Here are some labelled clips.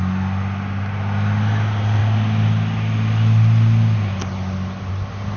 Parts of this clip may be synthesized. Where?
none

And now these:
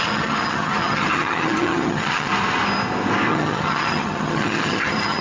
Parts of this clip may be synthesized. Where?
0.0-2.3; 3.3-5.2

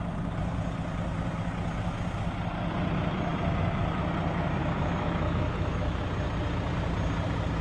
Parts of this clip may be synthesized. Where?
4.6-6.0

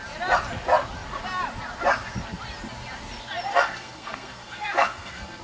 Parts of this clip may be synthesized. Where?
3.5-5.4

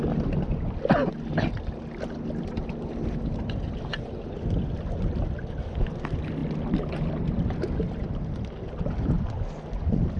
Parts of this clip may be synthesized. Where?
none

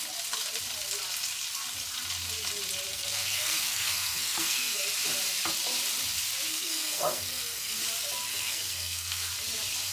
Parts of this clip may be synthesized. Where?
2.9-4.8; 6.5-7.8; 8.3-9.3

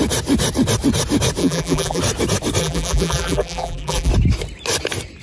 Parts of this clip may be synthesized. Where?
1.4-2.0; 2.6-4.1